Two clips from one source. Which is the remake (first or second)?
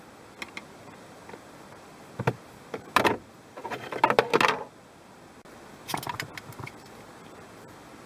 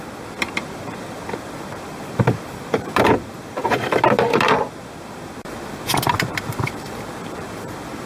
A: second